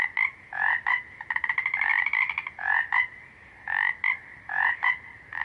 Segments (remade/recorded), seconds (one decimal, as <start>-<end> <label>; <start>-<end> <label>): 0.0-5.4 recorded